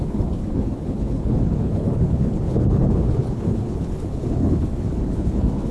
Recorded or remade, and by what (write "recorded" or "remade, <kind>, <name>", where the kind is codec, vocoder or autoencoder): remade, codec, HILCodec